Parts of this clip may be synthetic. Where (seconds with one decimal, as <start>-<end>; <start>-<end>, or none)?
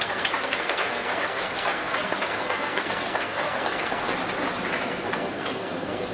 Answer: 0.0-4.2; 4.8-6.1